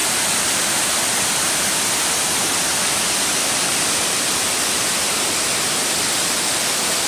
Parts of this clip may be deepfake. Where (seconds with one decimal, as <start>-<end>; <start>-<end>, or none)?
0.0-4.3